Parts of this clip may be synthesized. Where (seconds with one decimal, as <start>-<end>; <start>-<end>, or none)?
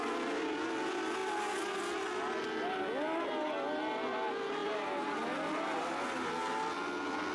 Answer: none